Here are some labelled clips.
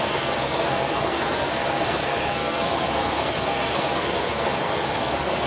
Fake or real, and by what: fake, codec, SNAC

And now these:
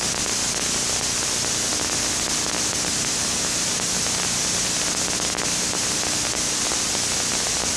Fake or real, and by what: real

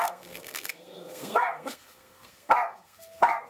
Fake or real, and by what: fake, codec, SNAC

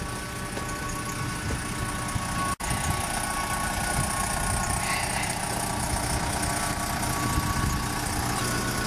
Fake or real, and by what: real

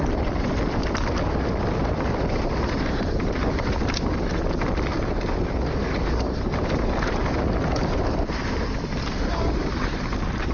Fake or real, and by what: real